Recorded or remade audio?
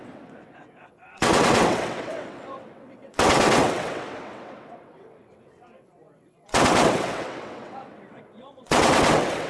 remade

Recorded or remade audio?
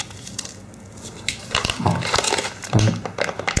recorded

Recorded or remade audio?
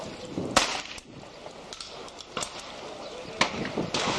recorded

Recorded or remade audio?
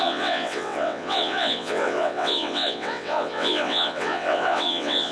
remade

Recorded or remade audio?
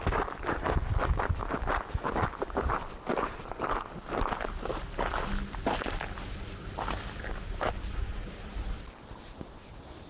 recorded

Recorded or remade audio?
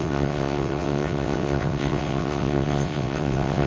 remade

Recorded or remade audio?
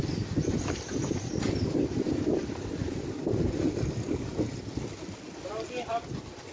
recorded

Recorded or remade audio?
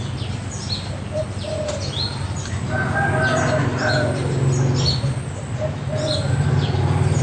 recorded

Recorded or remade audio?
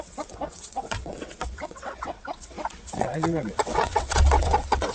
remade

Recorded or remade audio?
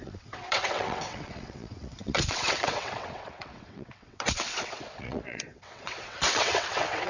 remade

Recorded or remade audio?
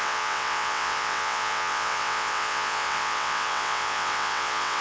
remade